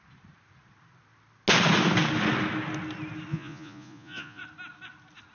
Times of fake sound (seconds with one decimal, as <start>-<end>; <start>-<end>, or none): 3.3-4.4